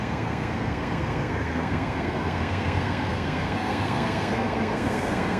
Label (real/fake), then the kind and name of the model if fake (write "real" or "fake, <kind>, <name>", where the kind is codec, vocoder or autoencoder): fake, codec, SNAC